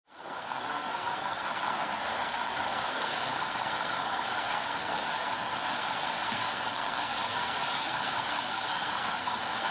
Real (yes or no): no